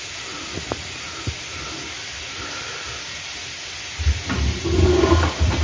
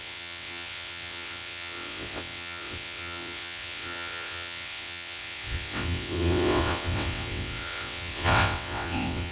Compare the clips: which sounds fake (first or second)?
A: second